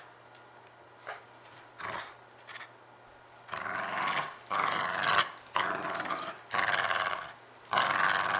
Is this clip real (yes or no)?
yes